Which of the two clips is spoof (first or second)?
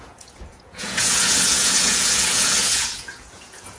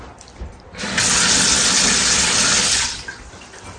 first